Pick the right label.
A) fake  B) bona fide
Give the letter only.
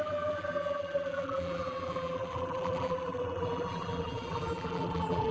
A